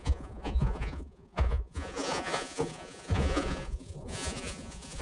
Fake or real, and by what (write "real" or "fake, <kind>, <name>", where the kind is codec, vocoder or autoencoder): fake, vocoder, Vocos